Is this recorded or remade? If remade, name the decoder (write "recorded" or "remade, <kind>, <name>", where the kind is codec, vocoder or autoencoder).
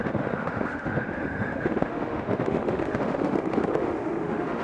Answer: remade, autoencoder, DAC-VAE